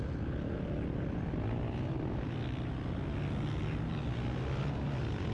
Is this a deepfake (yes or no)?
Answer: no